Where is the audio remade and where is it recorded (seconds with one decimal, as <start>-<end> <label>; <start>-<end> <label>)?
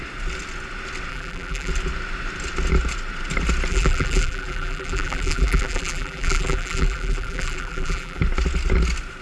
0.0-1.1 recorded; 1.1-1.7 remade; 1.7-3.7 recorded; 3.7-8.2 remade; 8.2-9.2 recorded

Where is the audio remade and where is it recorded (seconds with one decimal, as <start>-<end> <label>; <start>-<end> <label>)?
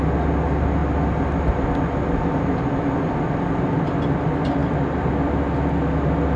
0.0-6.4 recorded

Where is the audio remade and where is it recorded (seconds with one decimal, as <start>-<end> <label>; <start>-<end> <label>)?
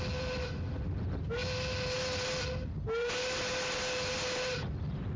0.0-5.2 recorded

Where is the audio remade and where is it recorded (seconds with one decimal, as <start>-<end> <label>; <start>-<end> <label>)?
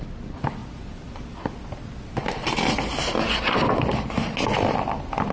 0.0-5.3 recorded